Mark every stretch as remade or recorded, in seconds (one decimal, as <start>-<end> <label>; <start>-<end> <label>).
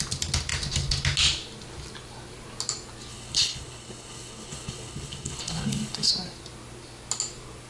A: 0.0-3.1 recorded; 3.1-6.1 remade; 6.1-7.7 recorded